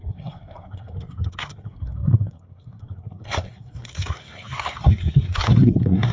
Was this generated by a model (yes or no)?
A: yes